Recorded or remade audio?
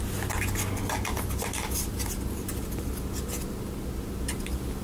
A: recorded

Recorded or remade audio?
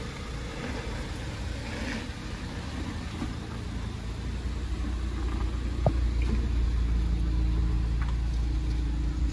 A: recorded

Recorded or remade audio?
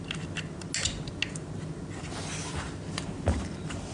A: recorded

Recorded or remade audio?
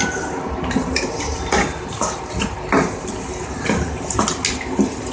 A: recorded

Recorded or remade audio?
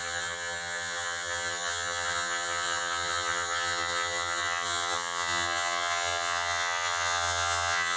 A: remade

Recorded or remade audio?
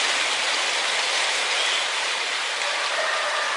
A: remade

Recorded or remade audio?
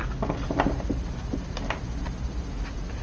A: recorded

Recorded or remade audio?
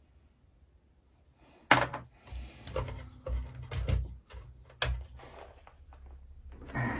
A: recorded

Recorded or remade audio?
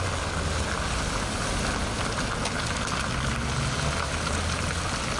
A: recorded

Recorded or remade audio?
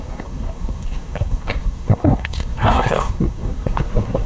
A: remade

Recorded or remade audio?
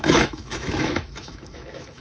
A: remade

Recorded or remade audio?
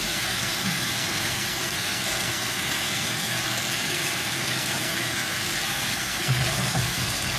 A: remade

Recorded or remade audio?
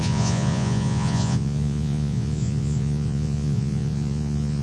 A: remade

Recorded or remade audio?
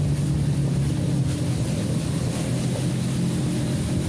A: recorded